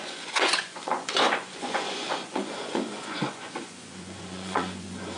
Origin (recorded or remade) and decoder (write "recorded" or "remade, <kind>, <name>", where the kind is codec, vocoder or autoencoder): remade, vocoder, Vocos